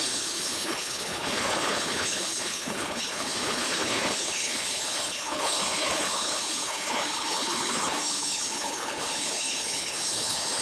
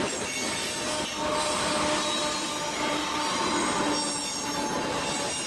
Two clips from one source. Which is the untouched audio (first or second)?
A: second